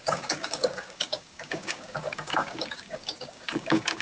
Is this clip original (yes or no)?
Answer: no